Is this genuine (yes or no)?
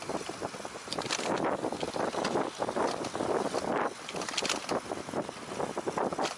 yes